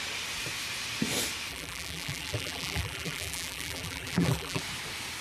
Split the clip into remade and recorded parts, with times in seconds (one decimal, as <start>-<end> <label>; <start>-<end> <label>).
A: 0.0-1.5 recorded; 1.5-4.6 remade; 4.6-5.2 recorded